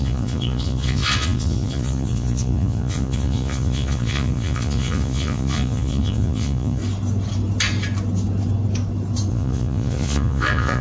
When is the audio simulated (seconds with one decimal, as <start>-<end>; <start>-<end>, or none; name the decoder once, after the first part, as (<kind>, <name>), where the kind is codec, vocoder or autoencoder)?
0.0-6.8 (vocoder, Vocos); 9.3-10.8